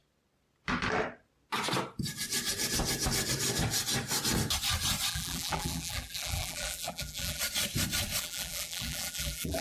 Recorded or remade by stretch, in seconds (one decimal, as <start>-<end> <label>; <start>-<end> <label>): 0.0-5.1 recorded; 5.1-7.4 remade; 7.4-8.2 recorded; 8.2-9.6 remade